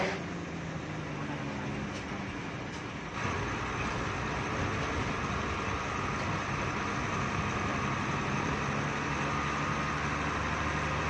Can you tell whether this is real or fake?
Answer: real